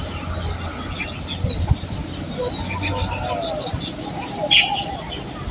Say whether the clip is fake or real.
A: real